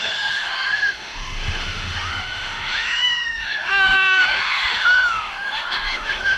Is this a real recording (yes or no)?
no